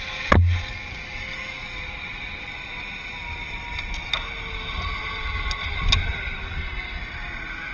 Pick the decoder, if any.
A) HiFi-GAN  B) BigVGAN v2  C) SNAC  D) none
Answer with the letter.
D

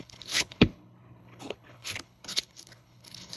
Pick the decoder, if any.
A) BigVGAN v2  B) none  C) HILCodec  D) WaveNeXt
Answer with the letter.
C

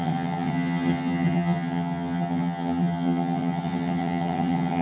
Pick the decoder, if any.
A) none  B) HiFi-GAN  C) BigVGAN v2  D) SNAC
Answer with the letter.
B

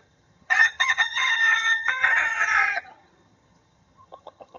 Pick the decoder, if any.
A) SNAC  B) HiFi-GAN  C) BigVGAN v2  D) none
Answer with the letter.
B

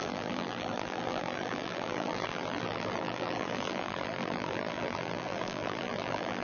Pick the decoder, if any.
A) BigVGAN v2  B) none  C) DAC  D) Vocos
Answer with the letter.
A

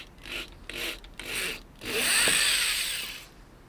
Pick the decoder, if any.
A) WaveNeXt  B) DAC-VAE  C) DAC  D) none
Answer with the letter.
D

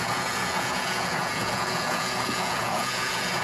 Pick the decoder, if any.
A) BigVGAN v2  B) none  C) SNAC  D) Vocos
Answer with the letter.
D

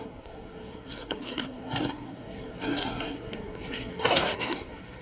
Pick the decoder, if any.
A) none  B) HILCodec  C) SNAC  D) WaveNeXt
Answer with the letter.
C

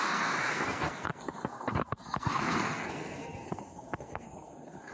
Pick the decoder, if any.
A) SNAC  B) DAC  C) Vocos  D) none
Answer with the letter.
A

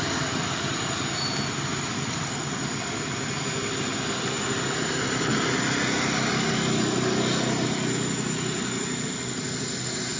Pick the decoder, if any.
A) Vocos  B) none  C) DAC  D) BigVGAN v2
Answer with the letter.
B